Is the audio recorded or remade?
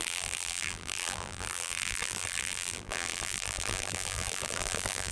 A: remade